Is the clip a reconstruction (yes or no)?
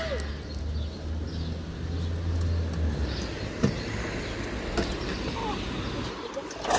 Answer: no